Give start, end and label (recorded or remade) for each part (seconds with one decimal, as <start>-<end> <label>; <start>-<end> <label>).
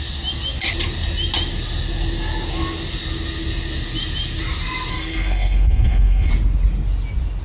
0.0-4.9 recorded; 4.9-6.3 remade; 6.3-7.4 recorded